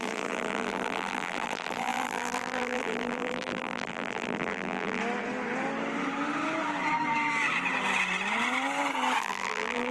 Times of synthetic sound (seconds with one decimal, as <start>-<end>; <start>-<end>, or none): 0.0-5.0; 9.2-9.9